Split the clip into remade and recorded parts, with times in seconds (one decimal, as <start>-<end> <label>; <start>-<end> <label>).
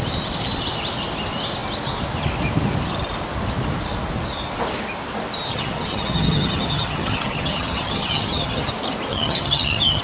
0.0-5.5 recorded; 5.5-8.7 remade; 8.7-9.1 recorded; 9.1-10.0 remade